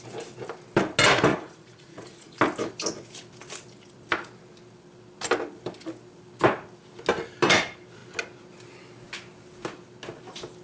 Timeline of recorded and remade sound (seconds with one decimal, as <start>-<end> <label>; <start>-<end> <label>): 0.0-1.3 recorded; 1.3-2.4 remade; 2.4-10.6 recorded

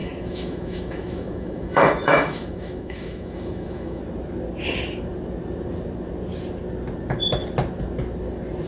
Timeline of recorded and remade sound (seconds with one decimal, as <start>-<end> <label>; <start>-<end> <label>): 0.0-4.0 remade; 4.0-8.7 recorded

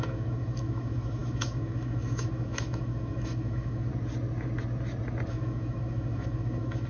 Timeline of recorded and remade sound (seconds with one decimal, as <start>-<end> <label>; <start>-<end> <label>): 0.0-3.9 remade; 3.9-5.3 recorded; 5.3-6.9 remade

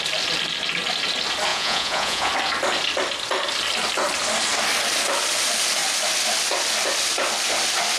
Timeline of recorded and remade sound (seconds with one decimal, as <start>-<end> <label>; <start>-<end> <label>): 0.0-1.5 recorded; 1.5-2.3 remade; 2.3-8.0 recorded